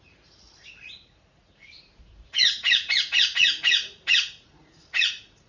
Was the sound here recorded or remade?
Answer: remade